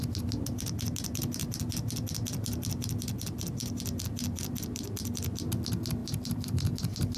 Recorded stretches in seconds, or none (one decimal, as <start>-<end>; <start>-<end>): 0.0-6.0